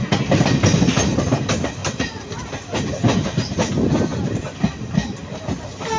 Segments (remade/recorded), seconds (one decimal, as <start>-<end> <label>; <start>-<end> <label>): 0.0-6.0 recorded